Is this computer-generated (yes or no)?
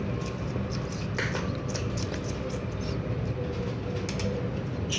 no